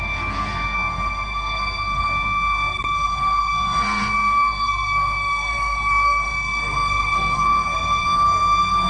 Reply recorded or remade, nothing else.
remade